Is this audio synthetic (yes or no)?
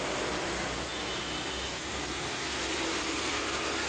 no